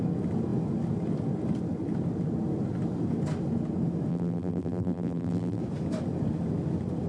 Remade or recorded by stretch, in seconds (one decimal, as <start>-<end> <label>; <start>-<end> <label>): 0.0-4.1 recorded; 4.1-5.6 remade; 5.6-7.1 recorded